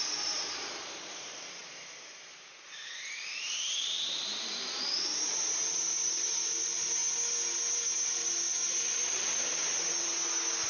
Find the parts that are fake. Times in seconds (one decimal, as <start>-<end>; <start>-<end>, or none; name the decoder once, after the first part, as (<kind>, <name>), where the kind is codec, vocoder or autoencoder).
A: 0.0-7.0 (vocoder, BigVGAN v2); 8.9-9.6